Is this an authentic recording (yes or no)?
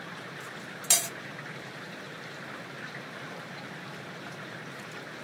yes